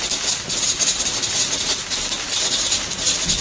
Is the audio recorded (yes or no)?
yes